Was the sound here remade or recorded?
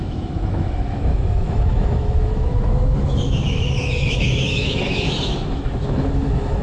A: remade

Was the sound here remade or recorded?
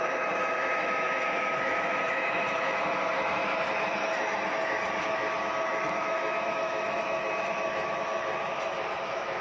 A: remade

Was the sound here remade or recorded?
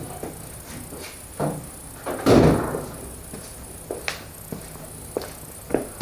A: recorded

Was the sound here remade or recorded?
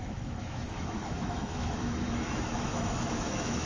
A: remade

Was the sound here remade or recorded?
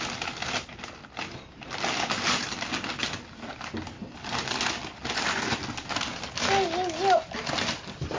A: recorded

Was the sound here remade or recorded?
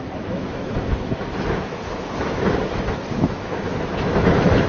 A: remade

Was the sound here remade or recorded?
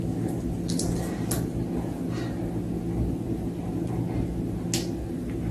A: recorded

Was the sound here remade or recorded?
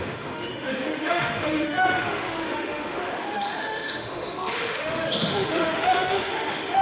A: remade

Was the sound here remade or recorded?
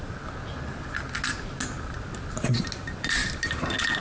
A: recorded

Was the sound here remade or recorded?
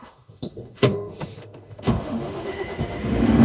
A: remade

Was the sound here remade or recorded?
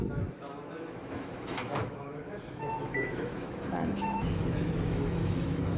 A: remade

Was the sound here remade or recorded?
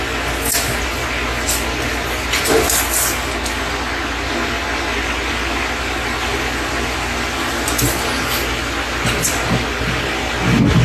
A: recorded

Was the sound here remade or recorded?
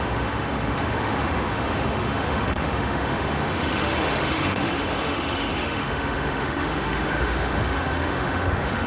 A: remade